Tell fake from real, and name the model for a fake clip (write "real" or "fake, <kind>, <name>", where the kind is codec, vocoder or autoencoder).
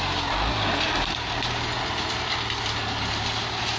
real